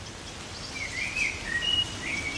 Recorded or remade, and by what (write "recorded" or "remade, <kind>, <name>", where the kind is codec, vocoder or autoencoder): recorded